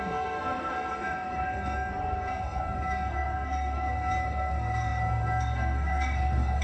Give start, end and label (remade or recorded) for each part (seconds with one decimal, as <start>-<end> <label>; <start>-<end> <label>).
0.0-6.6 remade